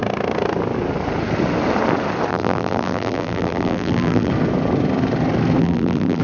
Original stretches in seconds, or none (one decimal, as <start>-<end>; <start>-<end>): 0.0-2.3; 4.3-5.6